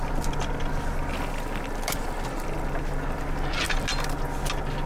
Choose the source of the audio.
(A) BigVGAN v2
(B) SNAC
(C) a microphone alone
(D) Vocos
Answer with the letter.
C